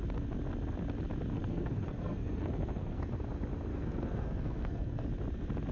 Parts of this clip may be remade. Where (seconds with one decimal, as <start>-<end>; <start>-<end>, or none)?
1.3-3.0; 3.7-5.0